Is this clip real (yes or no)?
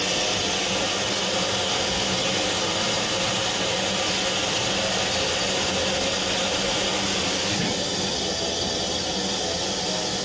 yes